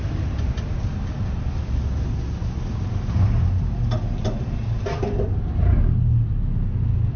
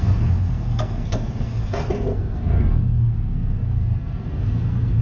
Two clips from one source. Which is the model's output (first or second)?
second